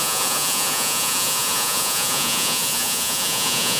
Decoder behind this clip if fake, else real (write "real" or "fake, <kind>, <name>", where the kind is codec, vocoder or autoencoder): fake, vocoder, Vocos